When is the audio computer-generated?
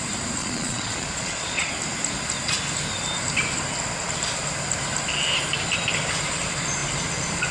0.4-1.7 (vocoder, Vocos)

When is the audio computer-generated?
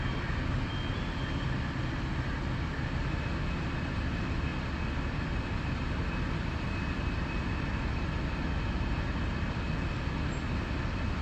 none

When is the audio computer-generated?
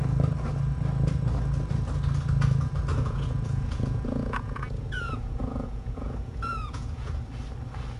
2.9-7.1 (vocoder, Vocos)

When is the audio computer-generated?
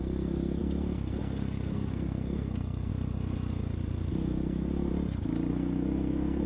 0.0-2.9 (codec, SNAC); 4.1-4.9; 5.5-6.5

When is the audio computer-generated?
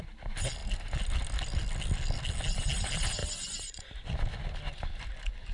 3.2-3.9 (vocoder, Vocos)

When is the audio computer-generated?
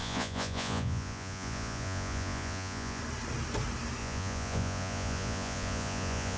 0.0-3.0 (vocoder, Vocos); 4.0-6.4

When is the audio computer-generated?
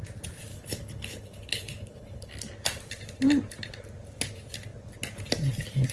0.5-2.3 (codec, HILCodec)